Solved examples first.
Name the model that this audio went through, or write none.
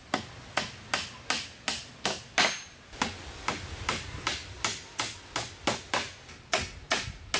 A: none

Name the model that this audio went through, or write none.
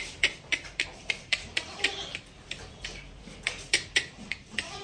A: vocoder, BigVGAN v2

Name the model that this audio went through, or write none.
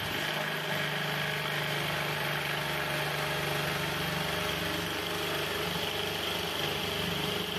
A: none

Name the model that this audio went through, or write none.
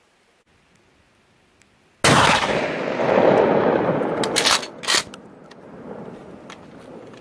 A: none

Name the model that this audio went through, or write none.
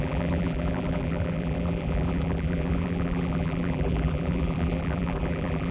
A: vocoder, BigVGAN v2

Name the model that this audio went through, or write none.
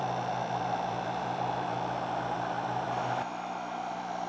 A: vocoder, BigVGAN v2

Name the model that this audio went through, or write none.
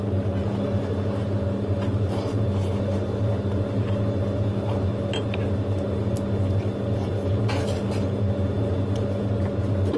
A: none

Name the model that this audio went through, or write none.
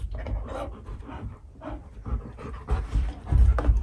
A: vocoder, BigVGAN v2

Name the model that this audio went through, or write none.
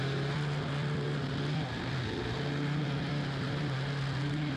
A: none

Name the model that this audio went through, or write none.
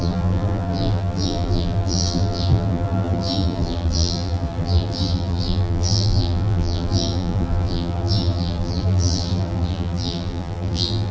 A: vocoder, BigVGAN v2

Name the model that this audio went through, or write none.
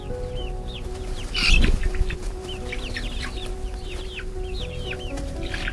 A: vocoder, BigVGAN v2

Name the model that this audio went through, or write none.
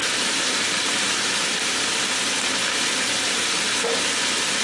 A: none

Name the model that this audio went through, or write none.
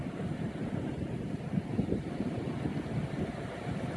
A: none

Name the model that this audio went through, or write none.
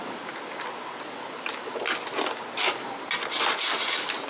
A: none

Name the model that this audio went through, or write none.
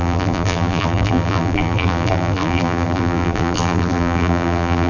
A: vocoder, BigVGAN v2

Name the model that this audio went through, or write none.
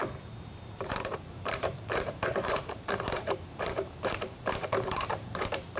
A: vocoder, BigVGAN v2